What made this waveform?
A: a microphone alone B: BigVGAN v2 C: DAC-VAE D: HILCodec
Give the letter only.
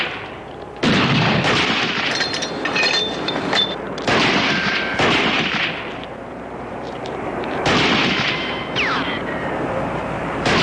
B